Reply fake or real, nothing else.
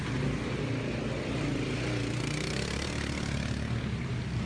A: real